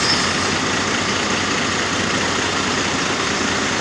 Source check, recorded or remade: remade